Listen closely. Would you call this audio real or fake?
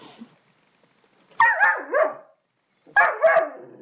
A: real